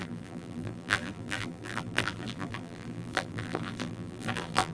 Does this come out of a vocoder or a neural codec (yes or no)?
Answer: yes